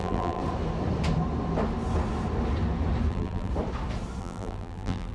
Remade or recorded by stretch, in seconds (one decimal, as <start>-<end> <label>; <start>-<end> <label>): 0.0-0.4 remade; 0.4-3.1 recorded; 3.1-3.5 remade; 3.5-4.2 recorded; 4.2-5.1 remade